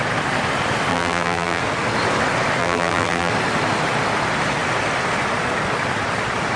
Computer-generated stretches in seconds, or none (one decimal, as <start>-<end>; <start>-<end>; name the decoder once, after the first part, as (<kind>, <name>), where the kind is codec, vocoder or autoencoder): 0.9-1.6 (vocoder, BigVGAN v2); 2.6-3.3